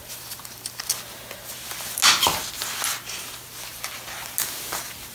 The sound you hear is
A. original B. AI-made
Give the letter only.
A